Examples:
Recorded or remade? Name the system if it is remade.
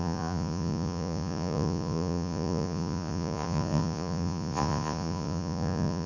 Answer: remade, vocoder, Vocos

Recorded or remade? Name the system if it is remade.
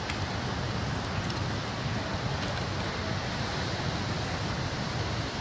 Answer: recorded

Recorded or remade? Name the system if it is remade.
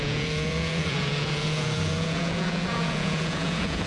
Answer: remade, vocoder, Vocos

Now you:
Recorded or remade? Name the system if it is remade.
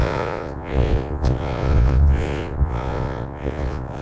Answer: remade, vocoder, Vocos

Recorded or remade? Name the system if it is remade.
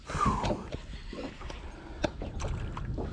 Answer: recorded